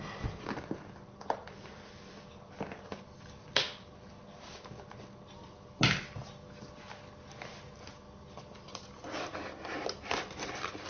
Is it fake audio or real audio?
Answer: real